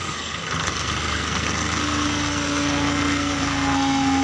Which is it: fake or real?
fake